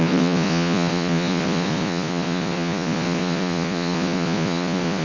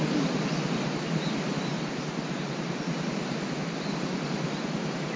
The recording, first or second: second